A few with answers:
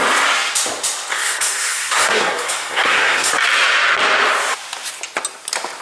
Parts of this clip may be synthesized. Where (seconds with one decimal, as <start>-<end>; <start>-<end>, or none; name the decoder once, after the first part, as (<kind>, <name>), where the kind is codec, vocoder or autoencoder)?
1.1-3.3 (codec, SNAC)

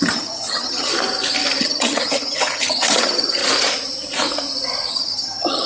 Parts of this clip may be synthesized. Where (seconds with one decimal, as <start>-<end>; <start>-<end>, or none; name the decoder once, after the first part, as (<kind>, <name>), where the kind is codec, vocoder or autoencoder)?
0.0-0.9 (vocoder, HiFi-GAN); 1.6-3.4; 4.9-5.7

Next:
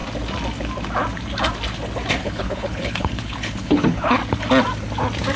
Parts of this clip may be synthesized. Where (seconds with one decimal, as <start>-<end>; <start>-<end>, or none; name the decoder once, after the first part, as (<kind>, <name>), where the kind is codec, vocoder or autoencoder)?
2.2-4.2 (codec, HILCodec)

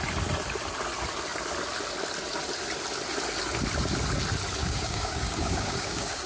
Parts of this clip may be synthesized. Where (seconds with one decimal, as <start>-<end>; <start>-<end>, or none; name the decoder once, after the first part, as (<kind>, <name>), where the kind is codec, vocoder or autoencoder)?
4.6-6.3 (codec, DAC)

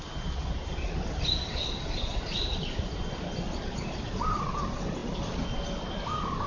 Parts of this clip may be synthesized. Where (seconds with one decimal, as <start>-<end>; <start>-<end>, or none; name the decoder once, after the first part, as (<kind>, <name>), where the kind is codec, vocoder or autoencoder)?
none